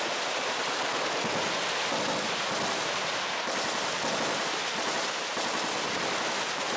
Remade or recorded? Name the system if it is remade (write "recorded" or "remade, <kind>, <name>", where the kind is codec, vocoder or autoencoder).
recorded